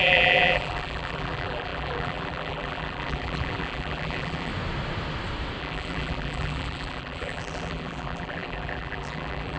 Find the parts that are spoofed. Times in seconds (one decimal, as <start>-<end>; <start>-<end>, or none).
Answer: 0.0-4.5; 5.6-9.6